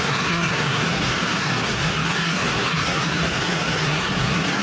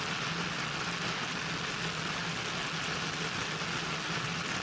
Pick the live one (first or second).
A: second